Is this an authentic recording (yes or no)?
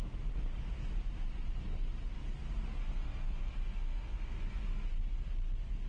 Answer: yes